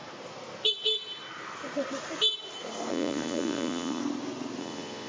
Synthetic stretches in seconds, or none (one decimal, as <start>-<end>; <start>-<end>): 2.9-4.0; 4.6-5.1